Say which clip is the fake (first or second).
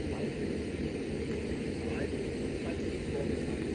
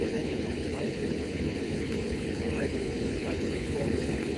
second